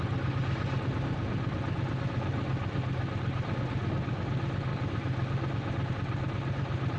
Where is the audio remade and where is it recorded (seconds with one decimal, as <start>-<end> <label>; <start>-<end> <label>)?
0.0-7.0 recorded